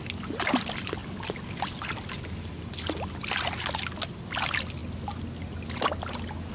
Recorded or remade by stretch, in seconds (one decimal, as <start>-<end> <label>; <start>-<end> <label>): 0.0-6.5 recorded